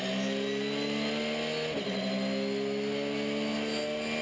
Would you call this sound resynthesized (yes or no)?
no